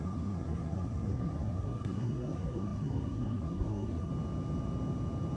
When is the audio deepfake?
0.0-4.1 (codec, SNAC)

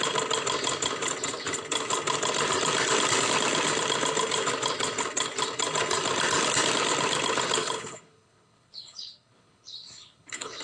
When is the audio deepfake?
7.6-10.6 (codec, HILCodec)

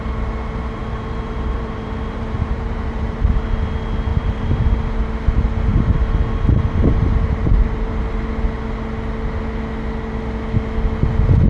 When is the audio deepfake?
0.8-3.3 (vocoder, BigVGAN v2); 4.1-4.6; 7.1-8.0